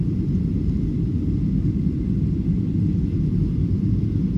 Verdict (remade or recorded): recorded